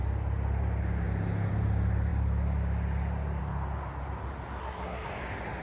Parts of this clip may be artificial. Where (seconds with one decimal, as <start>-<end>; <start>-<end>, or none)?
4.6-5.1

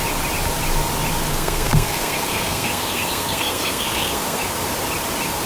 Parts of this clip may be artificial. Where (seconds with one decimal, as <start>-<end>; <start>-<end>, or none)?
1.3-4.6

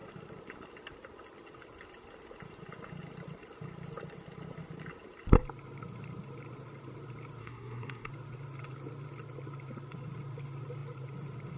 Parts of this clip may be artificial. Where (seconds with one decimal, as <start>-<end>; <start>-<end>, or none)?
7.4-8.1

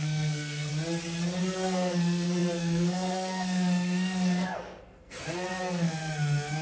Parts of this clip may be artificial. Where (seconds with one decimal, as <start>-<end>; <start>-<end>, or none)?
0.0-0.7; 1.4-6.6

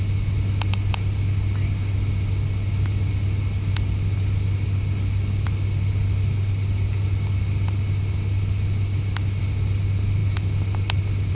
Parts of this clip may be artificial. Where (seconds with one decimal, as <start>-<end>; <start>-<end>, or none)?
none

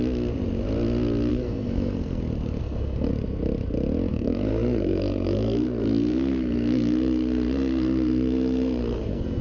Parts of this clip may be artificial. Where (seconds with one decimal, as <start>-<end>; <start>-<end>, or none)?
1.3-2.2; 2.6-3.1; 4.1-9.4

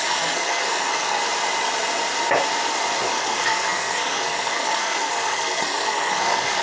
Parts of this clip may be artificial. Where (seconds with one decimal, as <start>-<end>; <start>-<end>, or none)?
0.0-1.2; 3.1-6.6